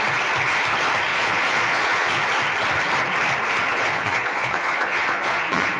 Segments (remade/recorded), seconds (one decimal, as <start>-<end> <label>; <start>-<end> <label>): 0.0-1.1 recorded; 1.1-2.2 remade; 2.2-3.7 recorded; 3.7-5.8 remade